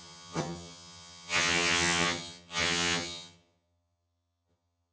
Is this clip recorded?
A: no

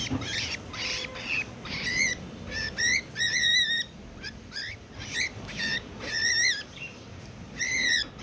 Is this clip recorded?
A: no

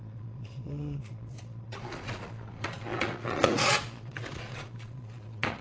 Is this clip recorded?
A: no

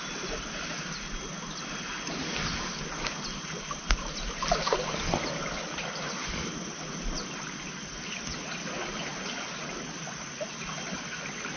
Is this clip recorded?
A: yes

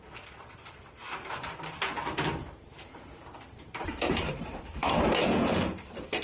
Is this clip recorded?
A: no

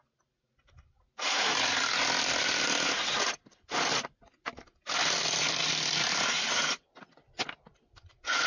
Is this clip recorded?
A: yes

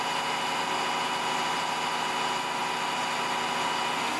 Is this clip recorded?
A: yes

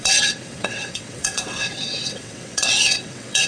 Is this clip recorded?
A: no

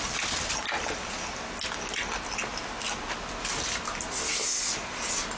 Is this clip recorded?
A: yes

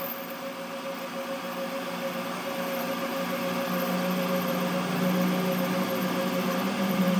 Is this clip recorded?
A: yes